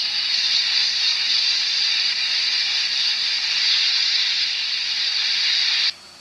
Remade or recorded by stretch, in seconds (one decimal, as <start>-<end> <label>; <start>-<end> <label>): 0.0-1.1 recorded; 1.1-2.3 remade; 2.3-2.9 recorded; 2.9-5.6 remade; 5.6-6.2 recorded